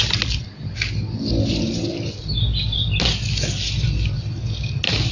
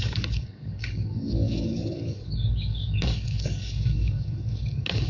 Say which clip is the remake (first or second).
second